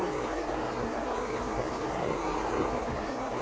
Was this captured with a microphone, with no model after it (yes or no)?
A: no